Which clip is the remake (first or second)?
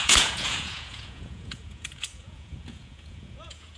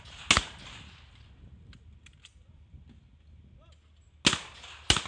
first